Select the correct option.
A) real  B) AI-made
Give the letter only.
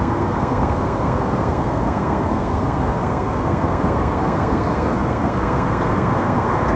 B